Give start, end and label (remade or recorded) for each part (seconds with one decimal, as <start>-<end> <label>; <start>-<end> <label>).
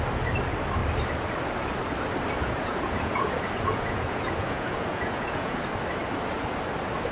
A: 0.0-2.4 recorded; 2.4-5.5 remade; 5.5-7.1 recorded